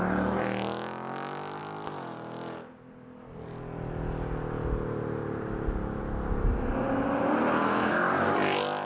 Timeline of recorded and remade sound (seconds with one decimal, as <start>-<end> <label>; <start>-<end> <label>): 0.0-8.9 recorded